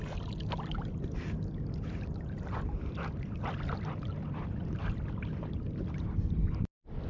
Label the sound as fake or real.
real